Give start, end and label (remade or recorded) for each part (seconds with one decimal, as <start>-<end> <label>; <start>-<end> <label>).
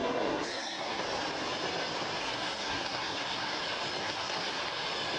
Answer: 0.0-1.0 remade; 1.0-2.2 recorded; 2.2-3.6 remade; 3.6-4.0 recorded; 4.0-4.6 remade; 4.6-5.2 recorded